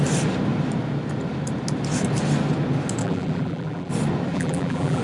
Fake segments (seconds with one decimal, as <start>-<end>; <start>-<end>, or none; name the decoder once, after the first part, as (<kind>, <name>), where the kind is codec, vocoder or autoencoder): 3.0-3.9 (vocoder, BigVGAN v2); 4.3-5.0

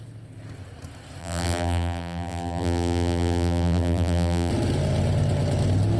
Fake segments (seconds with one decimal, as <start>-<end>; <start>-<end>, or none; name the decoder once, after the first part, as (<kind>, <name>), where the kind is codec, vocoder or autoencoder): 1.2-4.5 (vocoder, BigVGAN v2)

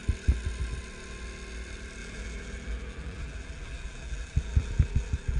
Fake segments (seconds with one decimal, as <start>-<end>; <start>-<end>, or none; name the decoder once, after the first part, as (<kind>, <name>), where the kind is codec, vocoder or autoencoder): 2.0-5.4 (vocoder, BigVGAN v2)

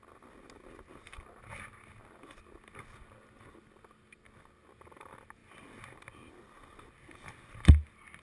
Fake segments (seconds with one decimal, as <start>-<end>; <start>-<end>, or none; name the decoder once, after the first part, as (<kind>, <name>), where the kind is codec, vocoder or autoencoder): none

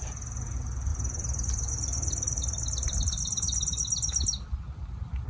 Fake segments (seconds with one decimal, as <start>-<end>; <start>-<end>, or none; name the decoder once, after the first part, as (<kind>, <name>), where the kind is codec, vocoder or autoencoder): 0.9-2.4 (vocoder, BigVGAN v2)